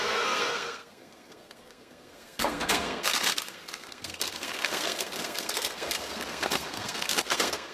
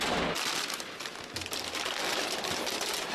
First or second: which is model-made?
first